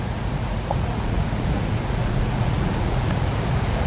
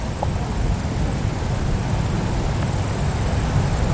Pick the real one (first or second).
second